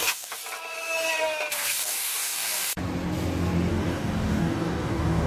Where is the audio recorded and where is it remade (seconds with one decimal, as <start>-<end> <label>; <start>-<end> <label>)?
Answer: 0.0-0.4 remade; 0.4-1.5 recorded; 1.5-2.8 remade; 2.8-3.7 recorded; 3.7-5.3 remade